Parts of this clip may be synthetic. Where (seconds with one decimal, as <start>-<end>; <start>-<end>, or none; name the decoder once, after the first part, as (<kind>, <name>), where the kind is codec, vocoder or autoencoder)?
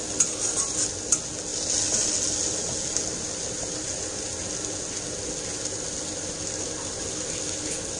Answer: none